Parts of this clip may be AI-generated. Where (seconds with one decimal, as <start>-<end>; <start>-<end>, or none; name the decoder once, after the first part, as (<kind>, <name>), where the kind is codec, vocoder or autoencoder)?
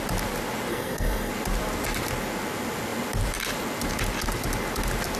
0.7-1.3 (codec, SNAC)